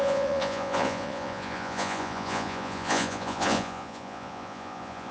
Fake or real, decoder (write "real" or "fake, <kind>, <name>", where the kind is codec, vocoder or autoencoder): fake, vocoder, Vocos